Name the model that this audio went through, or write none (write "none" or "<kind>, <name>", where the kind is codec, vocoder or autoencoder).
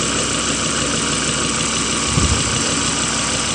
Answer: none